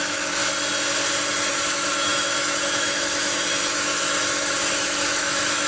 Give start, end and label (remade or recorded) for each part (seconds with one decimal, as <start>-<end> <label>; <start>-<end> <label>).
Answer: 0.0-0.4 remade; 0.4-1.5 recorded; 1.5-5.7 remade